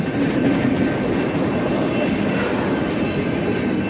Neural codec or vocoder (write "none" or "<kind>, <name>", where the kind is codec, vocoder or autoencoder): none